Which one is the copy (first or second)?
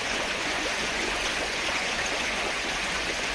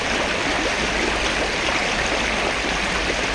first